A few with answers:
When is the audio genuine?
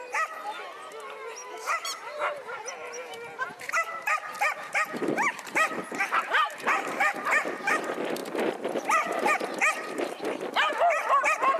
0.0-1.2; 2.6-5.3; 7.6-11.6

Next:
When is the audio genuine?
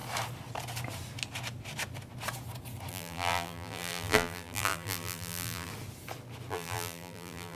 0.0-2.9; 5.7-6.5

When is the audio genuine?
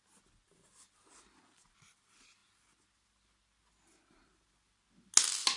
0.0-5.6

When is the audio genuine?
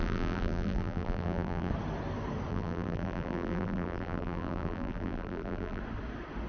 1.7-2.5; 5.8-6.5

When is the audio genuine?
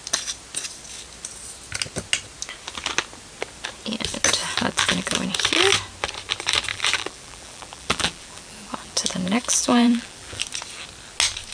0.0-4.4; 5.3-6.7; 10.4-11.5